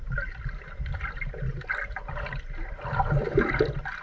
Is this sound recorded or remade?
recorded